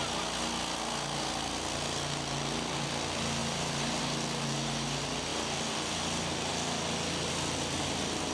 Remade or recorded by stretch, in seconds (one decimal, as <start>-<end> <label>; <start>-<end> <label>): 0.0-8.3 recorded